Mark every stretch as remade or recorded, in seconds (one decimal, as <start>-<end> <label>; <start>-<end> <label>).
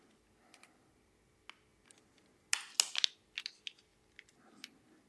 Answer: 0.0-5.1 recorded